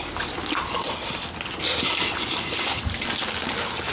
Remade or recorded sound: recorded